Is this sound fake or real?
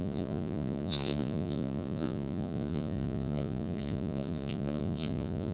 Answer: fake